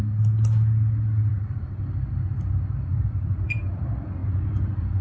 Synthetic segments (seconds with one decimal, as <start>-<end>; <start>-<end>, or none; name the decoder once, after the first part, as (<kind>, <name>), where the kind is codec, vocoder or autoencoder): 1.3-1.8 (vocoder, BigVGAN v2); 2.9-3.8; 4.2-5.0